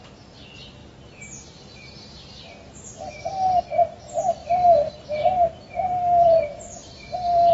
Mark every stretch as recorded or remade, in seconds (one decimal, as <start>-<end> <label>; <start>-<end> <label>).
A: 0.0-4.4 recorded; 4.4-7.5 remade